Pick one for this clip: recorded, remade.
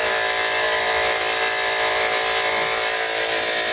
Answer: recorded